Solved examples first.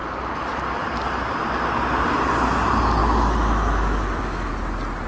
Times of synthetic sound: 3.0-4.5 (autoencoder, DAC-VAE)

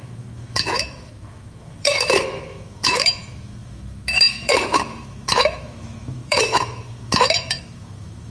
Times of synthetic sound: 0.0-8.3 (autoencoder, DAC-VAE)

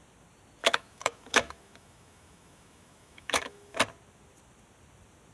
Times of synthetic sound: 0.6-3.8 (autoencoder, DAC-VAE)

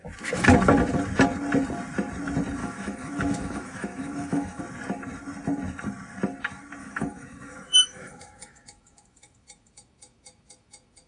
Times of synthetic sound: 2.6-4.6 (autoencoder, DAC-VAE); 6.8-11.1

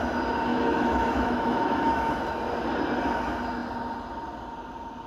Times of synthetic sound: 0.5-2.2 (autoencoder, DAC-VAE)

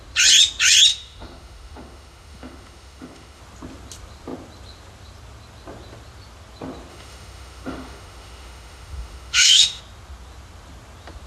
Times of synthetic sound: 0.9-3.4 (autoencoder, DAC-VAE); 6.9-9.8